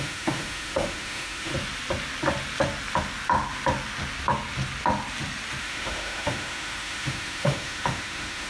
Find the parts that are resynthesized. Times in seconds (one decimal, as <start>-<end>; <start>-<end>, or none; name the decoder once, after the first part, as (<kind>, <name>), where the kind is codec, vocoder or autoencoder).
0.0-1.5 (autoencoder, DAC-VAE); 5.6-8.5